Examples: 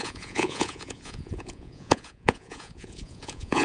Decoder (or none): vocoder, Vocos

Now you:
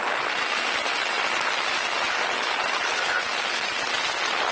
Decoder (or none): none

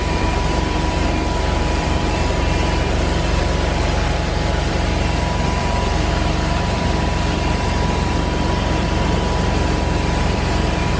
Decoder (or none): vocoder, BigVGAN v2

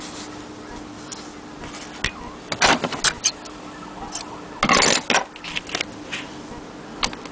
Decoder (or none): none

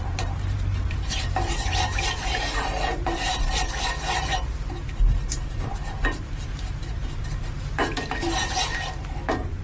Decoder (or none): vocoder, BigVGAN v2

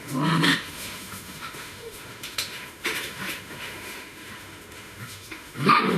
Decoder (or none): autoencoder, DAC-VAE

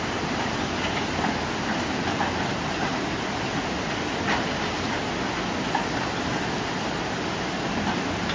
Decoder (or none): none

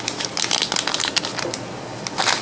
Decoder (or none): none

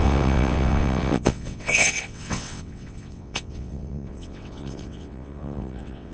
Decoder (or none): vocoder, WaveNeXt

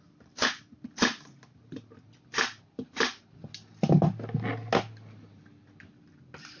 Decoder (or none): none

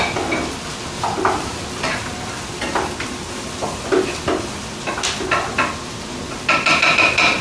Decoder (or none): none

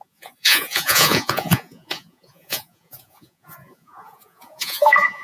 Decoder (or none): vocoder, Vocos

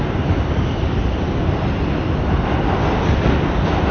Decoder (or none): none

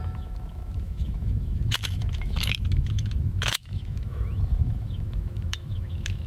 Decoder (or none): autoencoder, DAC-VAE